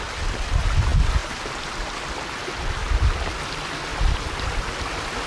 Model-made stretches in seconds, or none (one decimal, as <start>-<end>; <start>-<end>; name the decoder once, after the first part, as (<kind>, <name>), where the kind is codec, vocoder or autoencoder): 1.2-2.4 (vocoder, BigVGAN v2); 3.9-5.3